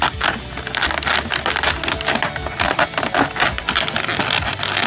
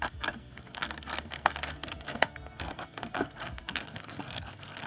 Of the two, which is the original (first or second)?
first